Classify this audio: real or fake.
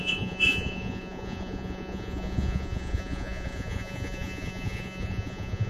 fake